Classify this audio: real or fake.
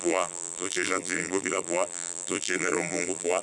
fake